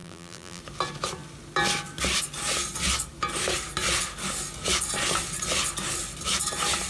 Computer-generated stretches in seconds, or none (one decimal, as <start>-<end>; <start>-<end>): 0.0-0.6